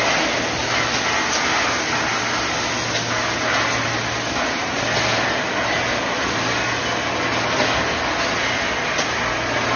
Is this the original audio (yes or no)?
yes